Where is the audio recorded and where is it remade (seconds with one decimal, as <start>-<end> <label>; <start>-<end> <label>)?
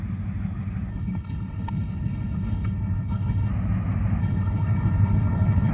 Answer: 0.0-0.9 recorded; 0.9-3.5 remade; 3.5-4.2 recorded; 4.2-5.7 remade